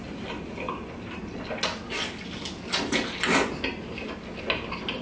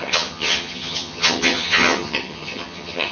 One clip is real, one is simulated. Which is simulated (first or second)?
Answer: second